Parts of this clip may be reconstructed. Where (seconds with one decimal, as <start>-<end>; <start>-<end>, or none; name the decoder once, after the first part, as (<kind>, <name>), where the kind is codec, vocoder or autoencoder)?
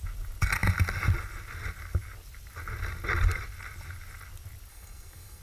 4.7-5.4 (codec, SNAC)